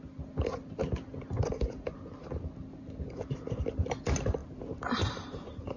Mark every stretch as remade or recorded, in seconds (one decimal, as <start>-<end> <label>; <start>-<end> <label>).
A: 0.0-4.4 recorded; 4.4-5.8 remade